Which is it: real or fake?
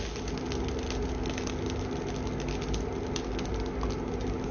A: real